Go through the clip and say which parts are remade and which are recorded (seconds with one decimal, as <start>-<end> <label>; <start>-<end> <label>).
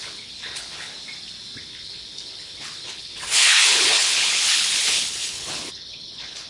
0.0-0.9 remade; 0.9-1.6 recorded; 1.6-6.5 remade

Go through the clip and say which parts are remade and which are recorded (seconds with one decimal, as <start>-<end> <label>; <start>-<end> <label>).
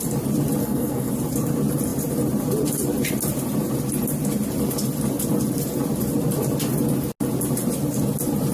0.0-0.6 recorded; 0.6-1.1 remade; 1.1-8.5 recorded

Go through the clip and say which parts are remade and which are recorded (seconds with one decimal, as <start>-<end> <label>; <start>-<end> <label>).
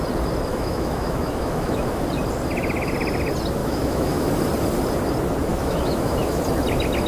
0.0-0.5 recorded; 0.5-2.0 remade; 2.0-3.6 recorded; 3.6-4.3 remade; 4.3-5.5 recorded; 5.5-6.4 remade; 6.4-7.1 recorded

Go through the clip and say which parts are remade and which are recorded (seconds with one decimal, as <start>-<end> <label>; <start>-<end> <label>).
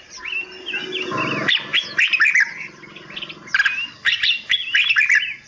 0.0-5.5 recorded